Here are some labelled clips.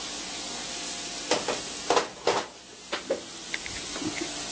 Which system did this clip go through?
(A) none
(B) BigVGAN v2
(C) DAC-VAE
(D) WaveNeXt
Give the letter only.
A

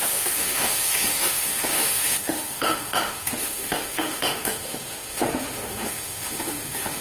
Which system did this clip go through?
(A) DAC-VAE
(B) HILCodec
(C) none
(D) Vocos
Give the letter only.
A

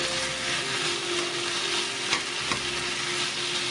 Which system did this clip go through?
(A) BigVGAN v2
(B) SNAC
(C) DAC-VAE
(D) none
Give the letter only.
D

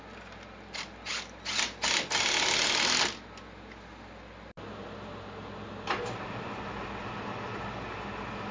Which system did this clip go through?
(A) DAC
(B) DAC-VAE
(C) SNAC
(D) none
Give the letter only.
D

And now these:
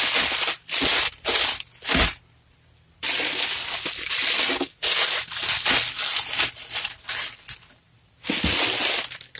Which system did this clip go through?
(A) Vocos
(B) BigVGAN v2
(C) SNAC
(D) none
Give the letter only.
D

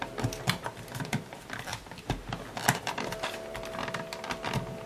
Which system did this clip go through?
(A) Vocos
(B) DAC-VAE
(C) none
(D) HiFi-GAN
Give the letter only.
C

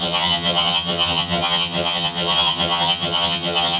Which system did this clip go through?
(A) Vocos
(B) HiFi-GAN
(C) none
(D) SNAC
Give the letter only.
B